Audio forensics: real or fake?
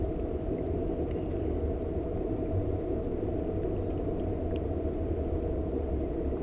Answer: real